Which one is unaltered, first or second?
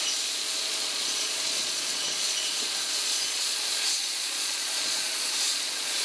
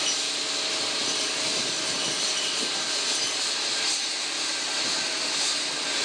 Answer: second